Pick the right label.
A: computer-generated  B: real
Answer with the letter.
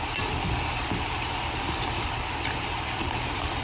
A